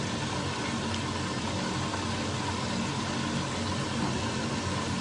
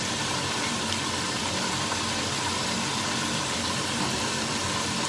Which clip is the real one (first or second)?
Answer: first